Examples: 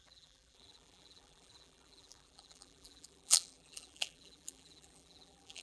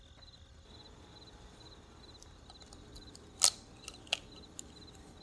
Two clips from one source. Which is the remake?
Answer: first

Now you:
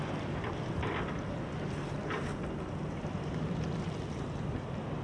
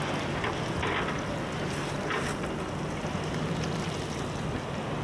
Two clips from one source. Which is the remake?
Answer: first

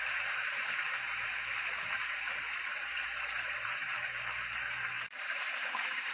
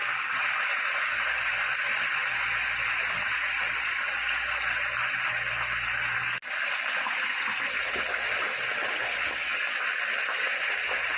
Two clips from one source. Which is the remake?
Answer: first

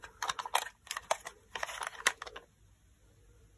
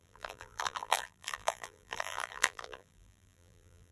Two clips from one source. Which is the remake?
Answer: second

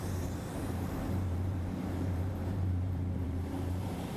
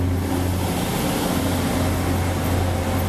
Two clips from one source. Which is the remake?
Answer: first